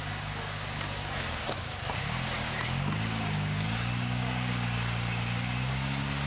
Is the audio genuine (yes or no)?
no